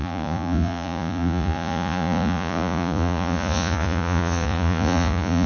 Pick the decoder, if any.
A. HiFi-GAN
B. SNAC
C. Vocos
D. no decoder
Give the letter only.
C